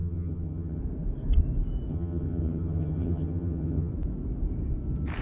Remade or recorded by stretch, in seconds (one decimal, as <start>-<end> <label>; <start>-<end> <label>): 0.0-0.8 remade; 0.8-1.9 recorded; 1.9-3.9 remade; 3.9-5.2 recorded

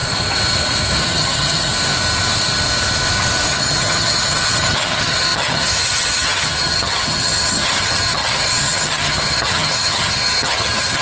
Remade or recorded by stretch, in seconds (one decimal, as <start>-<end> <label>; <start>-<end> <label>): 0.0-1.0 recorded; 1.0-1.7 remade; 1.7-3.5 recorded; 3.5-11.0 remade

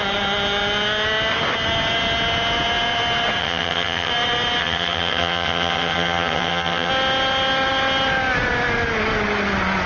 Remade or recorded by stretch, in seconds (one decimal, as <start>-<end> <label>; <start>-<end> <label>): 0.0-3.4 recorded; 3.4-4.1 remade; 4.1-4.6 recorded; 4.6-6.9 remade; 6.9-9.9 recorded